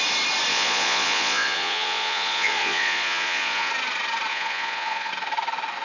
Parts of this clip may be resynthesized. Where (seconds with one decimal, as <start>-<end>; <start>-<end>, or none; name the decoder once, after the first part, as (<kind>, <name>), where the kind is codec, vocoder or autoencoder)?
0.5-3.7 (vocoder, Vocos); 4.3-5.1